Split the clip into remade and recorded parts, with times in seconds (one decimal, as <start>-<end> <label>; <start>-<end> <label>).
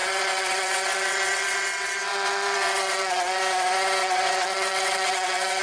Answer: 0.0-3.4 remade; 3.4-4.0 recorded; 4.0-5.6 remade